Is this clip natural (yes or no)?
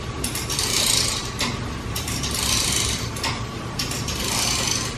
yes